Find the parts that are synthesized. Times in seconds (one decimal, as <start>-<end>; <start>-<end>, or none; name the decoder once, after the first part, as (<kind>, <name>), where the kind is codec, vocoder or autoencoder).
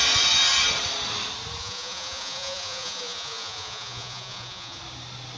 1.6-4.8 (vocoder, Vocos)